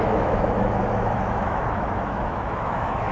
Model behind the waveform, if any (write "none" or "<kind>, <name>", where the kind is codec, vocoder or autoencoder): autoencoder, DAC-VAE